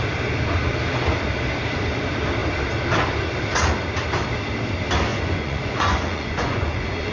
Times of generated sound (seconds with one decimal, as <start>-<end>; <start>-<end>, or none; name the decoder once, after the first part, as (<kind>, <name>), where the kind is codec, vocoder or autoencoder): 5.1-7.1 (vocoder, Vocos)